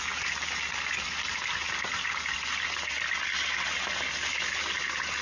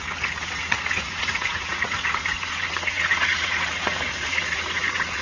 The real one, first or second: first